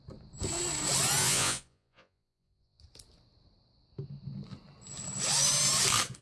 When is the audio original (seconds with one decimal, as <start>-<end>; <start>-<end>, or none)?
0.0-1.2; 2.8-6.2